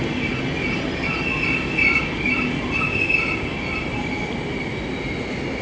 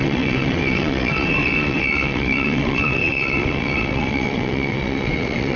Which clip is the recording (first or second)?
first